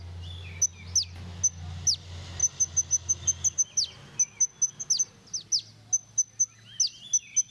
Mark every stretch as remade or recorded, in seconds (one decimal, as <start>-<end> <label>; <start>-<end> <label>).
0.0-7.5 recorded